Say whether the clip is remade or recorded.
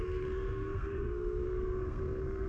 remade